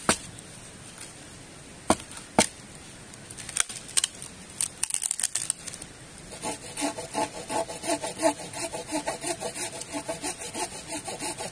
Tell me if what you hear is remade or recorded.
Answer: recorded